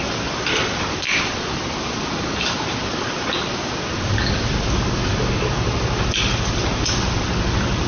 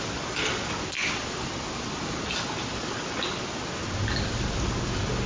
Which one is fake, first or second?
first